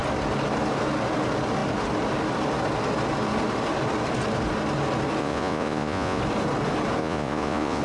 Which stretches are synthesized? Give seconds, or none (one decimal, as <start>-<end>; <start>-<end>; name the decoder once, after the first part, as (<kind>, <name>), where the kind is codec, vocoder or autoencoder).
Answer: 5.2-6.2 (vocoder, Vocos); 7.0-7.8

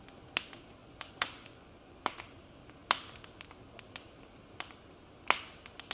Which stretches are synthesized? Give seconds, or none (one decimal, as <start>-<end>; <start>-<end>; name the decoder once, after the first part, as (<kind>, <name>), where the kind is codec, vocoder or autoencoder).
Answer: 0.8-2.0 (vocoder, Vocos)